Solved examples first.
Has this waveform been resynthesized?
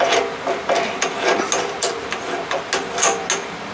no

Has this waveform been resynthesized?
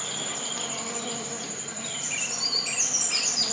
no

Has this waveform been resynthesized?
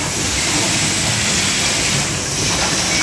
no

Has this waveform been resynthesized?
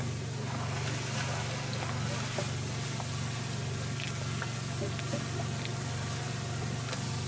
no